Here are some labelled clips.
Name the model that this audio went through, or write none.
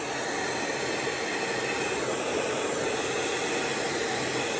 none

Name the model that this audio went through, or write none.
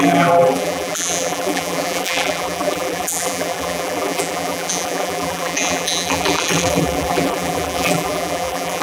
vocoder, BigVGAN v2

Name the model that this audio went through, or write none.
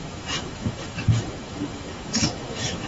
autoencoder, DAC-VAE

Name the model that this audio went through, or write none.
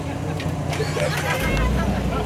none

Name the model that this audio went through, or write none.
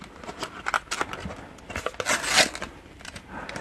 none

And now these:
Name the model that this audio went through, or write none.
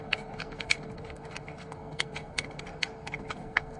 codec, SNAC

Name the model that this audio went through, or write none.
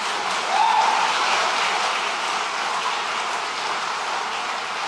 none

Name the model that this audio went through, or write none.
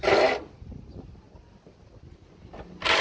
none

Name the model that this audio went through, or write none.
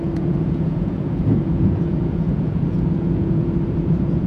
vocoder, Vocos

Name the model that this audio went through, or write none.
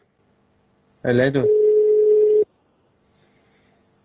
none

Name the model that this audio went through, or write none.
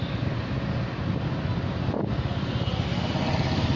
none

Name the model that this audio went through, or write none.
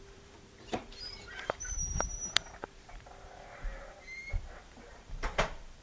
vocoder, BigVGAN v2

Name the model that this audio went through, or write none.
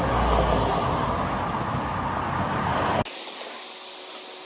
none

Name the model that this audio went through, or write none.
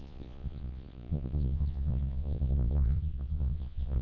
vocoder, Vocos